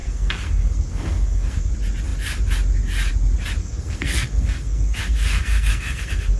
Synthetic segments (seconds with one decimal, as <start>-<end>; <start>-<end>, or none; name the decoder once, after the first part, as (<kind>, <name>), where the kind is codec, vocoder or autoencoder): 0.0-1.7 (codec, SNAC); 3.6-6.4